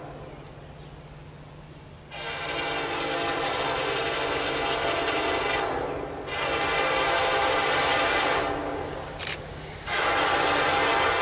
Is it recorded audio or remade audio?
recorded